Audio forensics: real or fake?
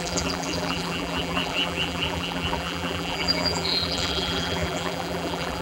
fake